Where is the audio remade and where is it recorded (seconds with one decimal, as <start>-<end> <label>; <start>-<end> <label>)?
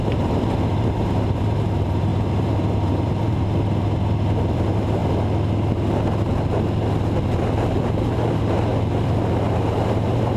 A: 0.0-5.0 remade; 5.0-7.9 recorded; 7.9-8.7 remade; 8.7-9.6 recorded; 9.6-10.4 remade